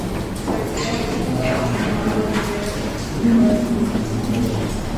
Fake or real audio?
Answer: real